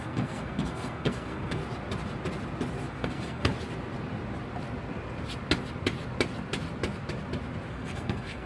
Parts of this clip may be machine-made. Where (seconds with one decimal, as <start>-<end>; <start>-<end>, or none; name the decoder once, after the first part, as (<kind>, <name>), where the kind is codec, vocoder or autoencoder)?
0.0-1.6 (codec, SNAC); 2.9-3.5; 7.7-8.5